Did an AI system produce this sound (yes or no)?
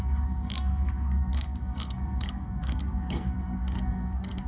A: yes